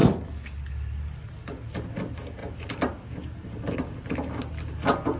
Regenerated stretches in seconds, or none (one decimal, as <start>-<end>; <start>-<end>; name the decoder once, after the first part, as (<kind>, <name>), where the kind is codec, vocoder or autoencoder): none